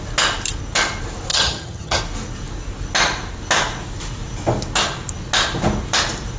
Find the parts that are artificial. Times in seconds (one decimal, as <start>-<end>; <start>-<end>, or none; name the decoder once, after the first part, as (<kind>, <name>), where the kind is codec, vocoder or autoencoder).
1.3-2.0 (vocoder, HiFi-GAN)